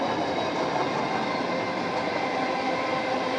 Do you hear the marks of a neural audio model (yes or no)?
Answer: no